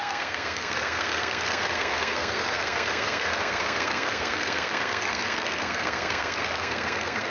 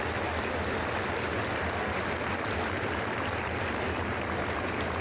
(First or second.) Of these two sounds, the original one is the second